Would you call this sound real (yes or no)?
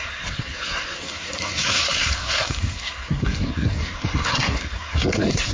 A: no